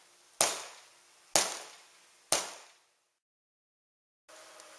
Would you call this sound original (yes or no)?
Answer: yes